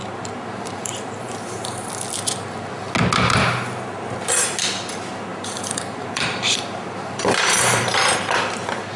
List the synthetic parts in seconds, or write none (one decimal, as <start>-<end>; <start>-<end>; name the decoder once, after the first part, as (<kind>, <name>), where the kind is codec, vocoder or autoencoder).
0.0-1.9 (vocoder, BigVGAN v2); 5.3-8.5